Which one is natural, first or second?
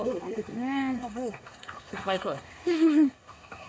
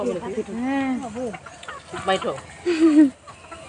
second